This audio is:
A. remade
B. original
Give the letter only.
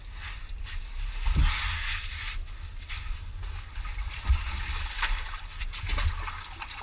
B